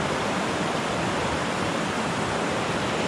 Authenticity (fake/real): fake